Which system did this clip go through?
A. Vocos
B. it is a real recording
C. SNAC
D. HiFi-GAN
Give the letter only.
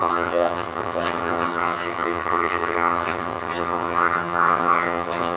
D